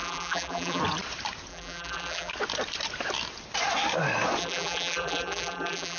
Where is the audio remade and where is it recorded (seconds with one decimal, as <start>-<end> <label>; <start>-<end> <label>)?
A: 0.0-0.8 remade; 0.8-1.5 recorded; 1.5-2.3 remade; 2.3-4.4 recorded; 4.4-6.0 remade